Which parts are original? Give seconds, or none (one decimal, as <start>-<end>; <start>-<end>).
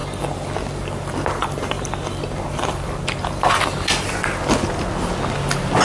3.5-5.8